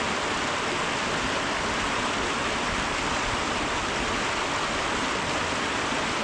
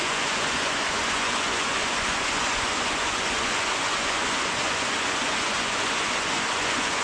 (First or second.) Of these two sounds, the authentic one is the first